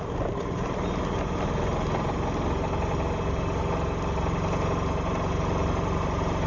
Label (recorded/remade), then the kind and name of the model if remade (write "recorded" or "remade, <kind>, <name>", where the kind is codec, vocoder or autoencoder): recorded